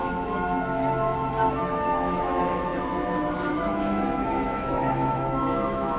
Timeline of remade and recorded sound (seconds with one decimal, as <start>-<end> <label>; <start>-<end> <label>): 0.0-1.5 recorded; 1.5-6.0 remade